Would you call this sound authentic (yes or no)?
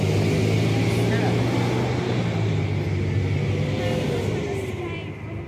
yes